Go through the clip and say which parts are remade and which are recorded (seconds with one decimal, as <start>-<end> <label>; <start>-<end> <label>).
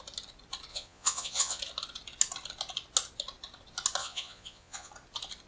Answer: 0.0-0.7 recorded; 0.7-1.6 remade; 1.6-4.0 recorded; 4.0-4.9 remade; 4.9-5.5 recorded